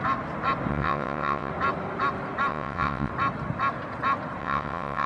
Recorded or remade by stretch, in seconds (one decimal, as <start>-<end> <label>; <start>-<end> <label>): 0.0-0.7 recorded; 0.7-1.5 remade; 1.5-2.5 recorded; 2.5-3.1 remade; 3.1-4.4 recorded; 4.4-5.1 remade